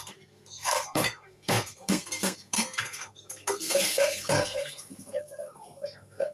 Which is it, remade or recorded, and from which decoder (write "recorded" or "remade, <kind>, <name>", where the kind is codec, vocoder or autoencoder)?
remade, codec, SNAC